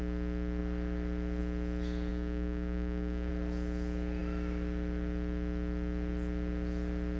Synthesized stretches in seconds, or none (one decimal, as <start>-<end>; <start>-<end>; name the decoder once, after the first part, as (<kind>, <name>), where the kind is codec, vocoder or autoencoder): 2.1-3.3 (codec, DAC)